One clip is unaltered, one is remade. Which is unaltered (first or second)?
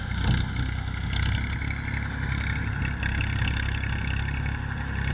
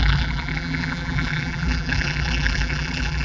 first